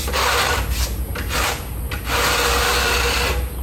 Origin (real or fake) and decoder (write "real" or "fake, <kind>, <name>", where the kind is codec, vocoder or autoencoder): real